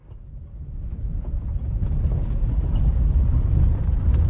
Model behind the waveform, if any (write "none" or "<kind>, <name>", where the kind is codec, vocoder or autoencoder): none